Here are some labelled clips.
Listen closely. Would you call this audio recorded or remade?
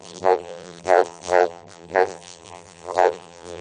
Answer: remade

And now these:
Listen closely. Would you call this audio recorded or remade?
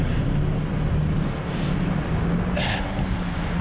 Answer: recorded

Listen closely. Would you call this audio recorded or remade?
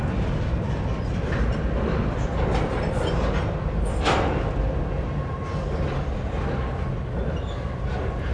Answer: recorded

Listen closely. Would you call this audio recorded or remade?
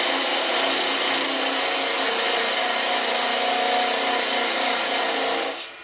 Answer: recorded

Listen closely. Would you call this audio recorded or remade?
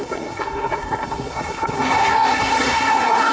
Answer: remade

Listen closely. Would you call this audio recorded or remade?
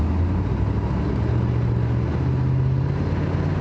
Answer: recorded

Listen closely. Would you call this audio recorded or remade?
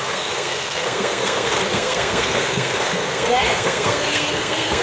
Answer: remade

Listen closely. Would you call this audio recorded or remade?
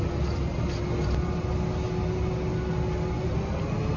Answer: recorded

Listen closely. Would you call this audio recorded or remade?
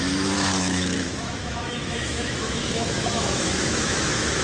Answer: remade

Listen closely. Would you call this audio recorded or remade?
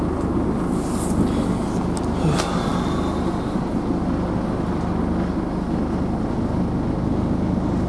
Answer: recorded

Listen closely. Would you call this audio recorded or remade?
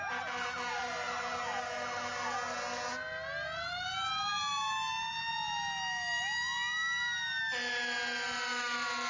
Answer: recorded